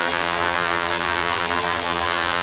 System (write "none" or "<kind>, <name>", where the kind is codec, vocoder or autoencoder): vocoder, BigVGAN v2